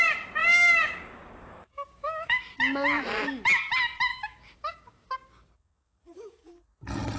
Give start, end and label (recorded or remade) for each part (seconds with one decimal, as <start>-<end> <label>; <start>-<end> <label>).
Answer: 0.0-0.4 recorded; 0.4-2.4 remade; 2.4-4.1 recorded; 4.1-6.5 remade; 6.5-7.2 recorded